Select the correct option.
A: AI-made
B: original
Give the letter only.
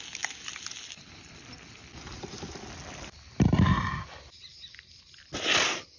B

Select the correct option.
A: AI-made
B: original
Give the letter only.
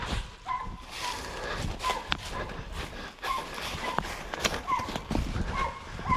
B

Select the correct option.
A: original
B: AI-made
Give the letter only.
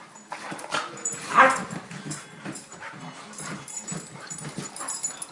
B